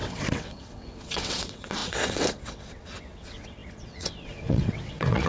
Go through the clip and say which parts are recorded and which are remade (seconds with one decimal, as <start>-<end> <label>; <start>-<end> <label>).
0.0-5.3 remade